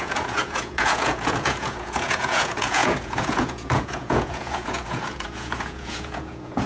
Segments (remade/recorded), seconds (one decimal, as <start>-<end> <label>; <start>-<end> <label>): 0.0-6.7 remade